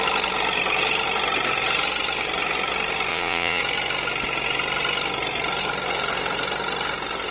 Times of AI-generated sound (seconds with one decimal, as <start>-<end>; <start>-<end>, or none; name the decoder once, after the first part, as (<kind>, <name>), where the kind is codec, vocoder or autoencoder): 3.1-3.6 (vocoder, Vocos)